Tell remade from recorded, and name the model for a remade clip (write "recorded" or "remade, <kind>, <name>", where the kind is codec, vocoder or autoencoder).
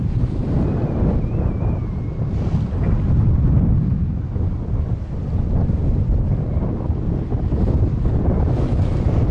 recorded